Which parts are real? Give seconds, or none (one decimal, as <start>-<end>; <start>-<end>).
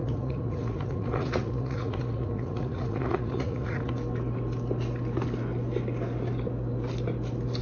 3.9-7.6